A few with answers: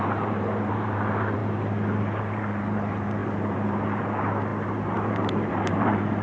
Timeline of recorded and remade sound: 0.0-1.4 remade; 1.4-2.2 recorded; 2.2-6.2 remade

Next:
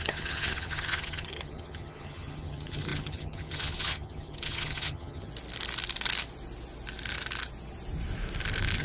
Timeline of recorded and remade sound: 0.0-5.3 remade; 5.3-8.8 recorded

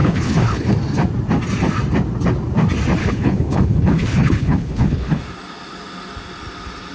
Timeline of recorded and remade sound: 0.0-0.7 remade; 0.7-3.0 recorded; 3.0-5.2 remade; 5.2-6.9 recorded